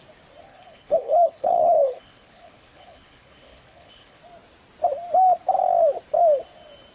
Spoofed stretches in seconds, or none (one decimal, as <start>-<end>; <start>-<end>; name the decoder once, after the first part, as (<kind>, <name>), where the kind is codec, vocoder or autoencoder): 0.5-4.2 (codec, HILCodec)